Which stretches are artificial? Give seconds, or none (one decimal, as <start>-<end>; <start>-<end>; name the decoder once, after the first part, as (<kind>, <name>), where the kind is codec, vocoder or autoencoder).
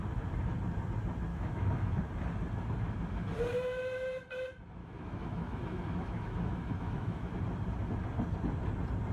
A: 1.3-2.0 (autoencoder, DAC-VAE); 4.8-7.3